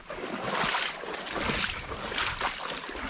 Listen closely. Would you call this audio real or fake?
real